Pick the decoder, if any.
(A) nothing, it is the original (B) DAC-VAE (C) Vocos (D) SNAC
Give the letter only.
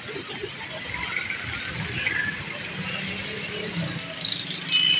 A